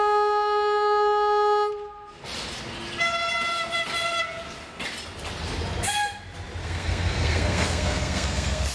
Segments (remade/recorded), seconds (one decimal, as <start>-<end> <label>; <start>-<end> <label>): 0.0-6.6 recorded; 6.6-8.7 remade